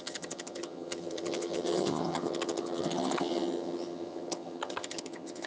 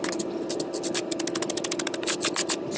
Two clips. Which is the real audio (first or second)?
second